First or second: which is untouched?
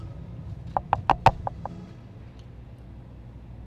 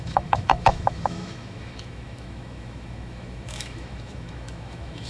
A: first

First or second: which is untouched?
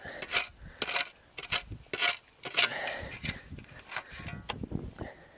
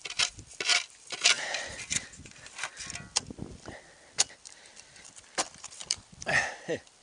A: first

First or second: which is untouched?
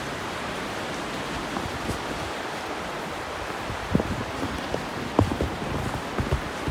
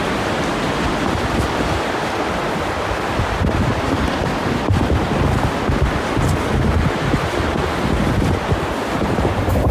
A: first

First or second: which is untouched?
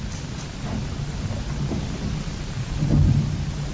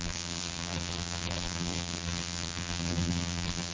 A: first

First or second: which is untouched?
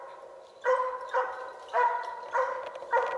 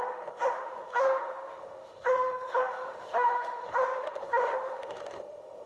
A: first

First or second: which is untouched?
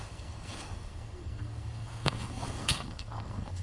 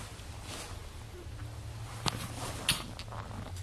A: second